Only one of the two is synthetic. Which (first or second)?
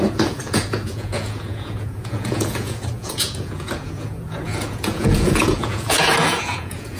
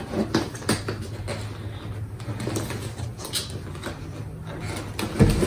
first